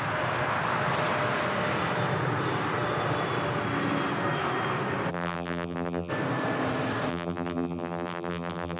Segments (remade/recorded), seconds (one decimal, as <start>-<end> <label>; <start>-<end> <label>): 0.0-5.1 recorded; 5.1-6.1 remade; 6.1-7.1 recorded; 7.1-8.8 remade